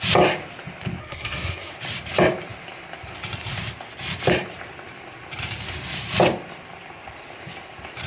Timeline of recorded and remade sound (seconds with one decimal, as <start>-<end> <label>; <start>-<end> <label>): 0.0-1.0 recorded; 1.0-1.7 remade; 1.7-8.1 recorded